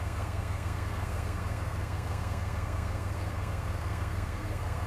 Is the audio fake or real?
fake